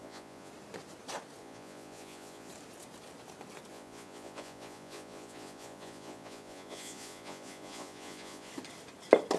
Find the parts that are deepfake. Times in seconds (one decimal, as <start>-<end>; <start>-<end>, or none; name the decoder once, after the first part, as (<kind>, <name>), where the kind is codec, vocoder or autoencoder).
0.0-0.5 (vocoder, Vocos); 1.4-2.5; 3.7-8.5